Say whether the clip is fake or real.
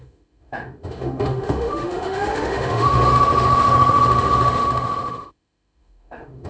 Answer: fake